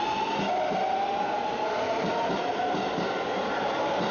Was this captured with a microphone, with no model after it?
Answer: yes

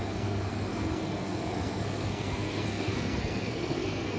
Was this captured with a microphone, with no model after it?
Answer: no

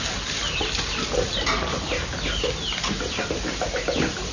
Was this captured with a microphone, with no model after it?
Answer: yes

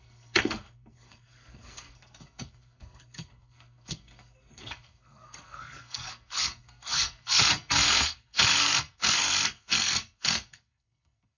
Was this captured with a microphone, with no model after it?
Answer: no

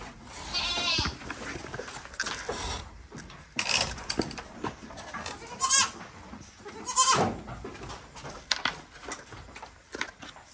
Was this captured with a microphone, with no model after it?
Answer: yes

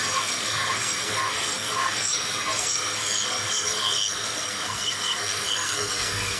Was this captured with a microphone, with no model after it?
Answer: no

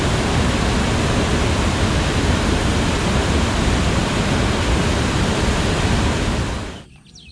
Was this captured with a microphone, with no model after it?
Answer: yes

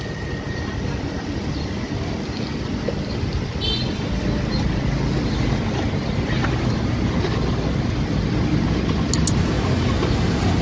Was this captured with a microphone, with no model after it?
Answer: yes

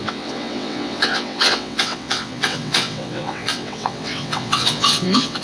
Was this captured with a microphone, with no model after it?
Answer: no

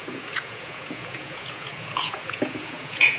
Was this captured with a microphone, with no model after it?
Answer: no